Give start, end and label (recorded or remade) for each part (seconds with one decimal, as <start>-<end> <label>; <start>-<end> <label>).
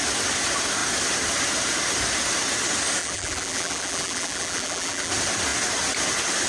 0.0-3.0 recorded; 3.0-5.1 remade; 5.1-6.5 recorded